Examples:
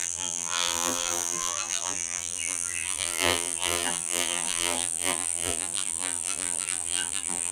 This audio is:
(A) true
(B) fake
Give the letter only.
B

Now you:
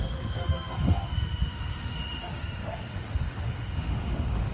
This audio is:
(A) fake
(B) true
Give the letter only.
A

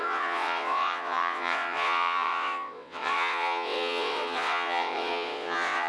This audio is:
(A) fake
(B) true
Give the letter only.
A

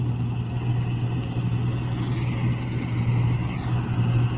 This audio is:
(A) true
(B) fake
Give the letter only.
A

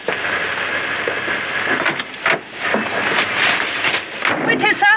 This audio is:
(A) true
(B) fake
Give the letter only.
A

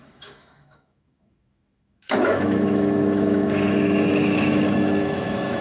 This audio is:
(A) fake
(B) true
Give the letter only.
A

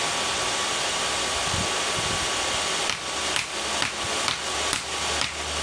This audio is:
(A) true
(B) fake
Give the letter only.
A